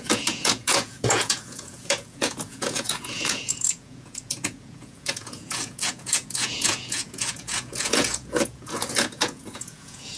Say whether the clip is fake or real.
fake